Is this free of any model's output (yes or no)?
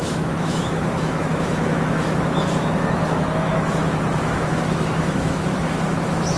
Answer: no